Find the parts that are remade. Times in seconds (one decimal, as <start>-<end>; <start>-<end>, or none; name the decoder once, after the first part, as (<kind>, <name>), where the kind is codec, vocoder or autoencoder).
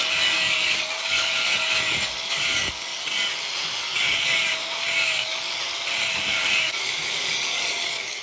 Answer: 0.0-2.9 (codec, DAC); 3.8-5.6; 6.3-8.2